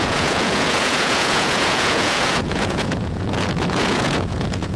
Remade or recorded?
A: remade